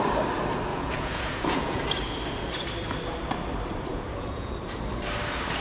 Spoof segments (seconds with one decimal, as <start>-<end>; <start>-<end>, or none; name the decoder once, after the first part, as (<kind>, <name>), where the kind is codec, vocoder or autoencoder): 0.7-1.8 (vocoder, Vocos); 3.9-4.5